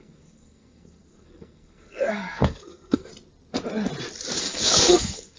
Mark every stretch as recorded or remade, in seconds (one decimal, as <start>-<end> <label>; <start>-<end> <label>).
0.0-3.1 remade; 3.1-4.4 recorded; 4.4-5.4 remade